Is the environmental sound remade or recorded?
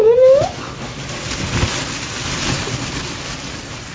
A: recorded